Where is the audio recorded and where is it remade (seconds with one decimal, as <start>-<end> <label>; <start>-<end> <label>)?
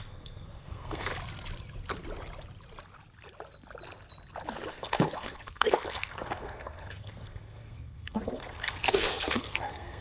0.0-1.1 remade; 1.1-4.7 recorded; 4.7-10.0 remade